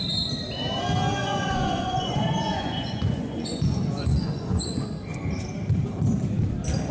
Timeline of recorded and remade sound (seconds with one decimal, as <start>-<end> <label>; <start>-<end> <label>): 0.0-1.2 recorded; 1.2-4.8 remade; 4.8-6.9 recorded